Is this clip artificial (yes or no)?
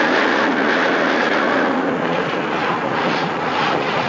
yes